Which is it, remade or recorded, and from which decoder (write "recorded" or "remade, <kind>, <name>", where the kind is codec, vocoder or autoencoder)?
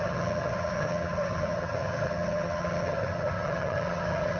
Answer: remade, vocoder, HiFi-GAN